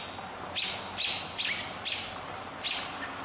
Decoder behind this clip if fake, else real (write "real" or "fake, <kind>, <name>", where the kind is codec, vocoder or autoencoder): real